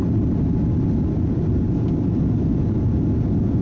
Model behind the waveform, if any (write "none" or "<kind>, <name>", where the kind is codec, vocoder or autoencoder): none